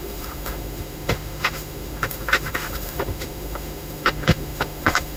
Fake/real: fake